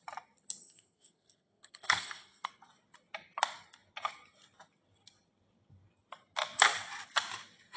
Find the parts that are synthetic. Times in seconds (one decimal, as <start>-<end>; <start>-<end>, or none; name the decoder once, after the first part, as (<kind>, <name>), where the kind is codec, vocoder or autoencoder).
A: 0.6-2.5 (codec, SNAC)